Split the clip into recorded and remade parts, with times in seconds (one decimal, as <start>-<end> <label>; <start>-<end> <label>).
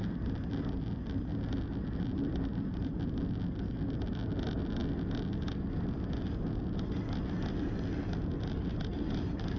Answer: 0.0-9.6 recorded